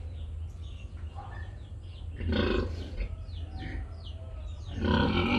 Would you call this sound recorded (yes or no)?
yes